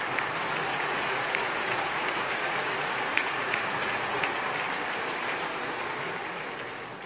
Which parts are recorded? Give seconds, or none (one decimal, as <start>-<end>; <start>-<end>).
0.0-0.7; 4.2-7.1